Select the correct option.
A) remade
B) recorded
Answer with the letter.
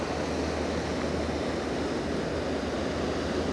B